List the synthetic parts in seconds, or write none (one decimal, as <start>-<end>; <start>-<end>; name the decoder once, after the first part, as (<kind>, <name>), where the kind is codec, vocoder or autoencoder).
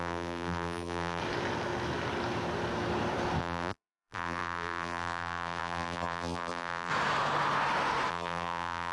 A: 0.0-1.2 (vocoder, BigVGAN v2); 3.4-6.9; 8.1-8.9